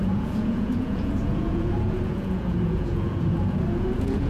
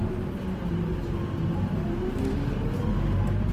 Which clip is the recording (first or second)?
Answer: second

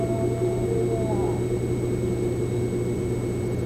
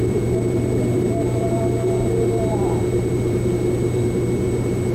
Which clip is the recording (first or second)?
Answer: first